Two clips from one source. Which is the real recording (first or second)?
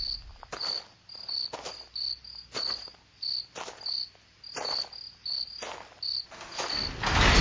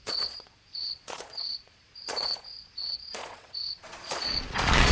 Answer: first